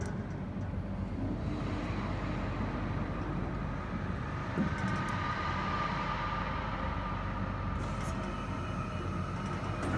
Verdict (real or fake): real